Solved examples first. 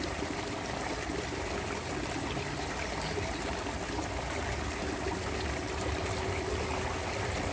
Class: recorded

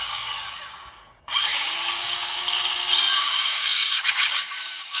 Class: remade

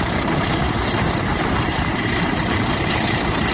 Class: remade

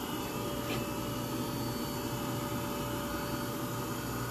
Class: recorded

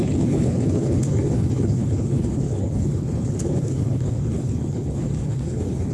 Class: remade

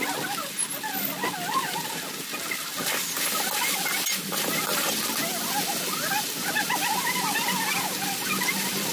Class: recorded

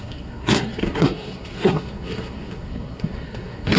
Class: remade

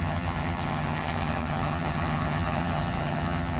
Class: remade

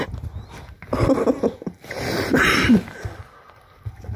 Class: recorded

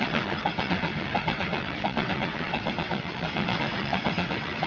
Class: remade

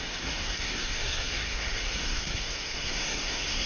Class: remade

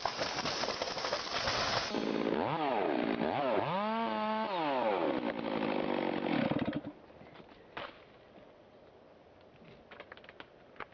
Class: recorded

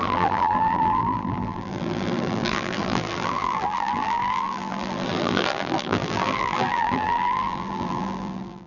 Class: remade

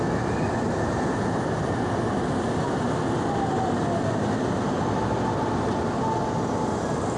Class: recorded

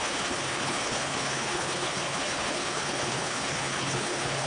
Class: remade